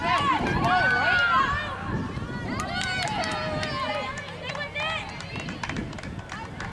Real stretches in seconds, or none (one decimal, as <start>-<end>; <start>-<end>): 0.0-6.7